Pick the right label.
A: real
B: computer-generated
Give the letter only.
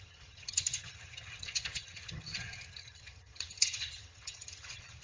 B